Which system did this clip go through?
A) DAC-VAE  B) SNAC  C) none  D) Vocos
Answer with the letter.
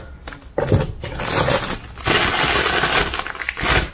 C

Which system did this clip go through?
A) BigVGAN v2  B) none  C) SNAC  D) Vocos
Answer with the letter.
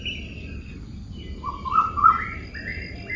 B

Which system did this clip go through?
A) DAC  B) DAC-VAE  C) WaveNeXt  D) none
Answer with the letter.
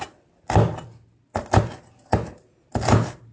D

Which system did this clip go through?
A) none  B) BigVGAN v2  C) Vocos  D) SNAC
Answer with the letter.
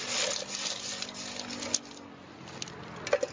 A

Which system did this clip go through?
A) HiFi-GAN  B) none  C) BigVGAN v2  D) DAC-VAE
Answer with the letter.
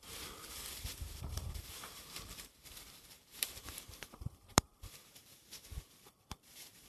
C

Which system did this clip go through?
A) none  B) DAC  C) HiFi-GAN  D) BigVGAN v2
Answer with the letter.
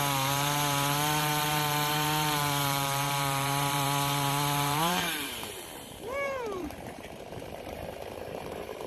D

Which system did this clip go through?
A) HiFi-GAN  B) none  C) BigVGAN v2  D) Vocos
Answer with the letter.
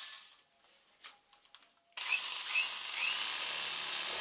B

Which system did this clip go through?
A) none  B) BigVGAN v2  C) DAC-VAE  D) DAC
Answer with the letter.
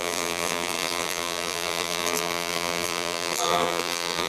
B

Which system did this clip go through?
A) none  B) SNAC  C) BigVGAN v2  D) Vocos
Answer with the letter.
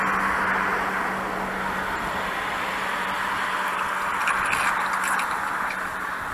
A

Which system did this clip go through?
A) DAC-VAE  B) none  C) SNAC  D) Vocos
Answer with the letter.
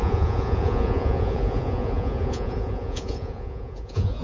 D